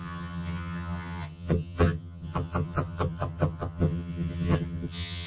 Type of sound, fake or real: fake